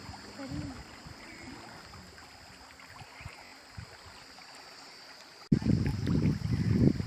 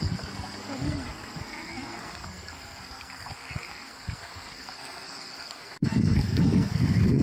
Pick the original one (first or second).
first